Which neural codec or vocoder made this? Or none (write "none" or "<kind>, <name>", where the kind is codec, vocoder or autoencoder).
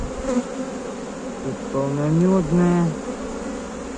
none